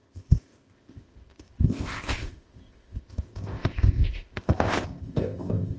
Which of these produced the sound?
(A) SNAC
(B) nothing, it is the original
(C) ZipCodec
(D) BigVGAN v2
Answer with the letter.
C